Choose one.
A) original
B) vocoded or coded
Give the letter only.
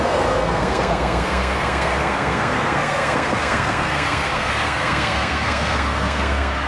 B